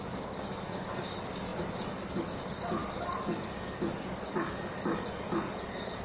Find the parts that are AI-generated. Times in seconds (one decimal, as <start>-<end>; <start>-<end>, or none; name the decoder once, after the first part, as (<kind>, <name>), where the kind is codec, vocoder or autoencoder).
0.0-6.0 (codec, DAC)